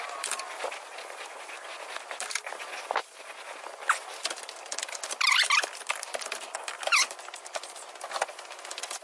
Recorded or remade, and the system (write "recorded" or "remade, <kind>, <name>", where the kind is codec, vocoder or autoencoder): recorded